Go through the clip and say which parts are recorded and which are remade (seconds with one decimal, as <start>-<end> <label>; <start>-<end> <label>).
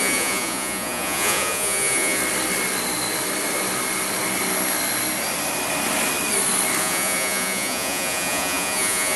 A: 0.0-2.2 remade; 2.2-6.8 recorded; 6.8-9.2 remade